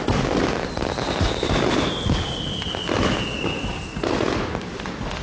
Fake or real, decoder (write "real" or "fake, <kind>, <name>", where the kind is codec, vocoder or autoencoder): real